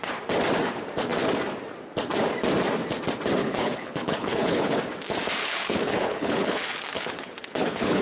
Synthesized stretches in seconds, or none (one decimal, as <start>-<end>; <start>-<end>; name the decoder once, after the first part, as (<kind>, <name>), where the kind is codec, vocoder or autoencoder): 3.4-4.8 (codec, HILCodec); 5.4-8.0